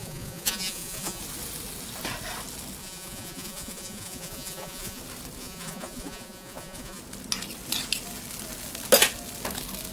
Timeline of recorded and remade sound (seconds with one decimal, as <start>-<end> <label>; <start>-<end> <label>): 0.0-1.2 remade; 1.2-2.8 recorded; 2.8-5.0 remade; 5.0-5.4 recorded; 5.4-7.0 remade; 7.0-9.9 recorded